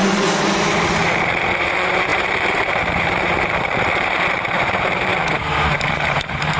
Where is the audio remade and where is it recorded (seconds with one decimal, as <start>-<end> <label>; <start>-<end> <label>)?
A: 0.0-5.1 remade; 5.1-5.8 recorded; 5.8-6.6 remade